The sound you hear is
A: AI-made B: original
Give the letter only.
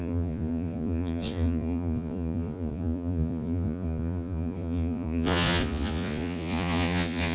A